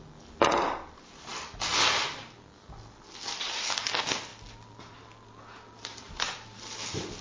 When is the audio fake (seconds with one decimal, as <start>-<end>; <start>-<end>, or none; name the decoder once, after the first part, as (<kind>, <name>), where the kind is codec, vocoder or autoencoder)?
none